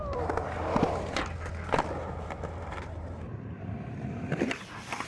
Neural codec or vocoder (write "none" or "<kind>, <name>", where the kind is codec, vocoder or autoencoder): vocoder, BigVGAN v2